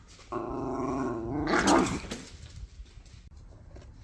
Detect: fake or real real